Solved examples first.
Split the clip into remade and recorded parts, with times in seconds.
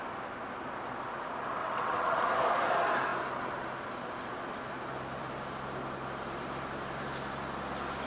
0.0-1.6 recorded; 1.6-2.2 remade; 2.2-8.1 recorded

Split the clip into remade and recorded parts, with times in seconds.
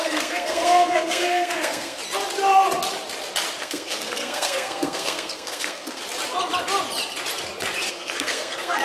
0.0-2.0 remade; 2.0-3.6 recorded; 3.6-6.0 remade; 6.0-7.9 recorded; 7.9-8.8 remade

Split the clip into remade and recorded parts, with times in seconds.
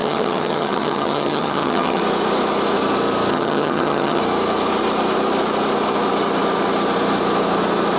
0.0-2.0 remade; 2.0-3.3 recorded; 3.3-4.2 remade; 4.2-8.0 recorded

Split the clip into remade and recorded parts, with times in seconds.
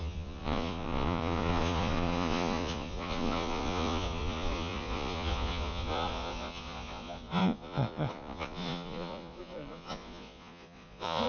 0.0-11.3 remade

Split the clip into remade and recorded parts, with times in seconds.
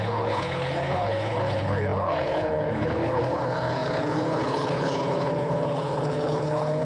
0.0-6.8 remade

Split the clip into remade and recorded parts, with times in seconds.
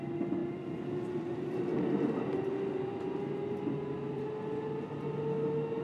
0.0-5.8 recorded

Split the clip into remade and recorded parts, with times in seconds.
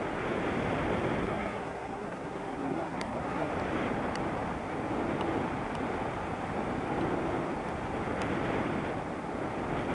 0.0-1.2 recorded; 1.2-3.5 remade; 3.5-9.9 recorded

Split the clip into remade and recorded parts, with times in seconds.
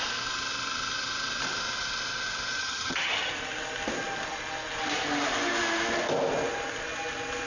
0.0-2.6 recorded; 2.6-3.3 remade; 3.3-7.5 recorded